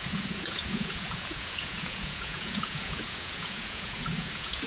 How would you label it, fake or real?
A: fake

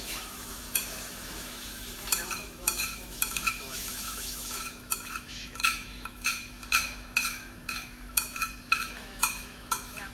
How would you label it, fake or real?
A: fake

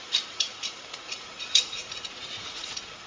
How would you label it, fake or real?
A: fake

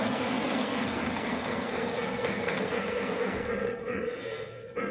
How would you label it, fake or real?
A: fake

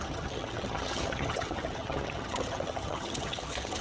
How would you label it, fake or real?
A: fake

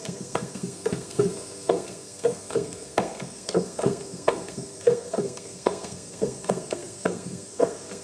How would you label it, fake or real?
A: fake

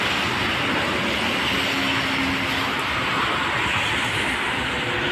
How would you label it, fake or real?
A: real